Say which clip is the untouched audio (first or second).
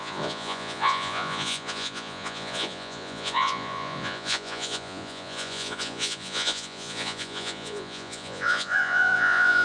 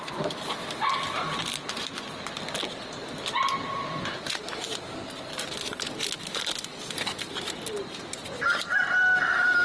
second